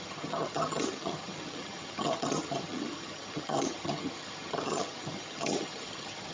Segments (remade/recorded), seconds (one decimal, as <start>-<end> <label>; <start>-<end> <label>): 0.0-6.3 remade